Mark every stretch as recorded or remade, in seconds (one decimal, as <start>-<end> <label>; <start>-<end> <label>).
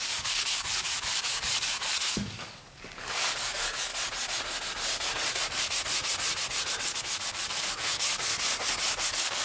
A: 0.0-3.9 remade; 3.9-7.0 recorded; 7.0-8.3 remade; 8.3-9.0 recorded; 9.0-9.4 remade